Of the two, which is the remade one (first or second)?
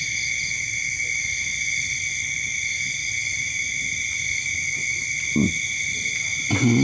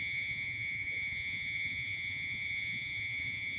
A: second